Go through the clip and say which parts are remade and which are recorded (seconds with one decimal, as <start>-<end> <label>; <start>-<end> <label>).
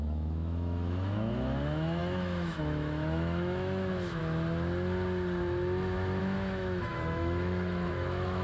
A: 0.0-4.2 remade; 4.2-6.2 recorded; 6.2-8.4 remade